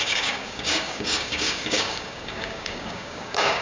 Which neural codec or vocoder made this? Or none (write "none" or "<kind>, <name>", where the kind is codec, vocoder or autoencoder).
codec, DAC